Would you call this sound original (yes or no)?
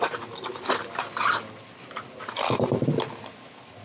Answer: yes